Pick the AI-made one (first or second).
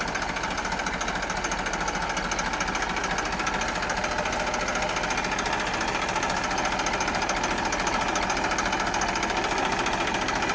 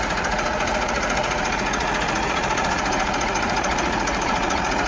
second